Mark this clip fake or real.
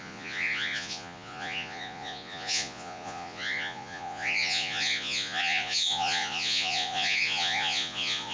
fake